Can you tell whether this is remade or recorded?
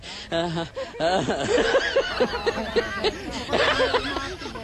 recorded